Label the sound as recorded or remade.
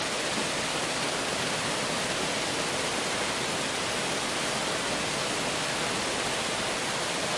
recorded